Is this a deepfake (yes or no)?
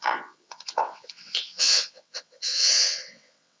yes